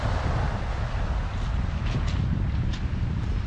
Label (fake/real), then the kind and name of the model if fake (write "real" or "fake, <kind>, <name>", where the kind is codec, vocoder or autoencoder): real